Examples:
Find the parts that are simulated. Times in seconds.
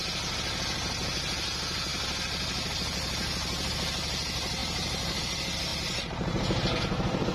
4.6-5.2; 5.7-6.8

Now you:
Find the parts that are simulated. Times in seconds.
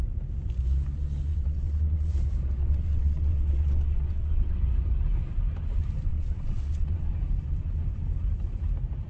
1.3-2.1; 2.6-4.6; 6.1-7.1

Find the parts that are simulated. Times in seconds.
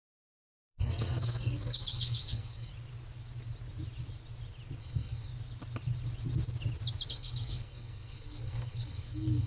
0.0-2.7; 4.8-5.3; 7.1-9.5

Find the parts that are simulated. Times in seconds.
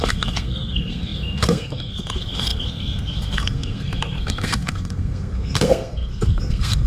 0.0-6.9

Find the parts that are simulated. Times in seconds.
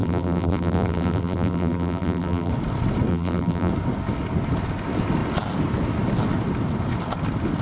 0.0-2.5; 3.1-3.7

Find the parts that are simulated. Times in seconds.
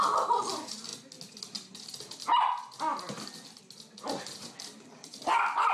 none